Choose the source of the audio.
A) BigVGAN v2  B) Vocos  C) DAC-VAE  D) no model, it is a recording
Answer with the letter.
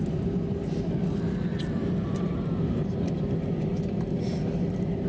D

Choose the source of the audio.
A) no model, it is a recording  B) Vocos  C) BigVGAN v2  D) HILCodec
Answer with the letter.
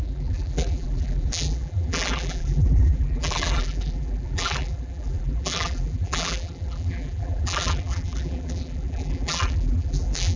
C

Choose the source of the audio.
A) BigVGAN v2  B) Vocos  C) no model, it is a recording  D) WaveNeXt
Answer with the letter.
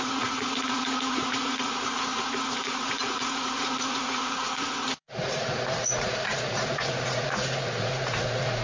B